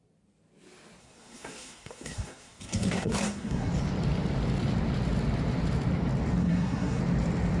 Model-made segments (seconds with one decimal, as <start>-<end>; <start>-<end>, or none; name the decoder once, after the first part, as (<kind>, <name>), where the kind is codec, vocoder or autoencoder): 1.0-3.7 (codec, SNAC); 6.4-7.0